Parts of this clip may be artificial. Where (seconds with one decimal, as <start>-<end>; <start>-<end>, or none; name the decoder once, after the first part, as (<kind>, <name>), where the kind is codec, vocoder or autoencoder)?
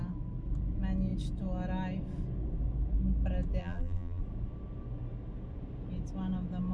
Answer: 3.6-4.2 (vocoder, BigVGAN v2)